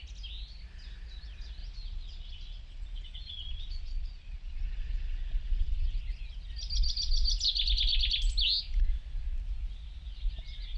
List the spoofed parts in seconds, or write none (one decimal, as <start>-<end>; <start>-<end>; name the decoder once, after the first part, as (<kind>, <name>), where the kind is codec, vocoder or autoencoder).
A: 1.6-6.0 (vocoder, Vocos)